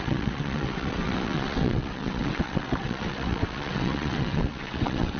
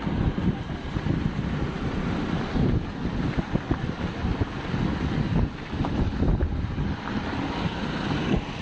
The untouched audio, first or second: second